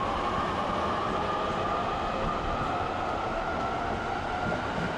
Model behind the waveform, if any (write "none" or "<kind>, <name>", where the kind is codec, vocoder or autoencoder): none